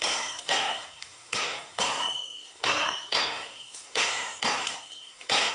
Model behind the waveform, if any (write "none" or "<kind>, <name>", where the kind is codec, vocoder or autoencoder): codec, SNAC